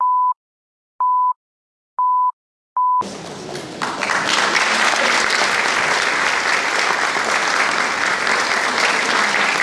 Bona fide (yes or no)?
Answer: yes